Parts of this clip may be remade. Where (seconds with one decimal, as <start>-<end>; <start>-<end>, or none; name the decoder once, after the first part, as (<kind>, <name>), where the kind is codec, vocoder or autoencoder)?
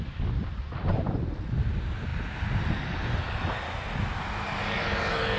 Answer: none